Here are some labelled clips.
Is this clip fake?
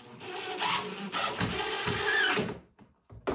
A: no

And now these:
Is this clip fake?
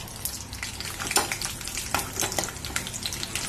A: no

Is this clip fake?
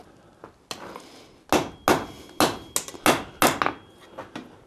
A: no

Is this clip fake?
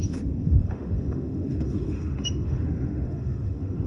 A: yes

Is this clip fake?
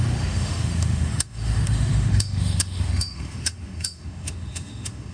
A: yes